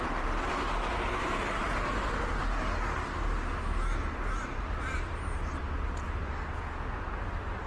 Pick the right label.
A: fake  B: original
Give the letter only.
B